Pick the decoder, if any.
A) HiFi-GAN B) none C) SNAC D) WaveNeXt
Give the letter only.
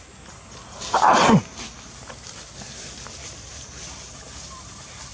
B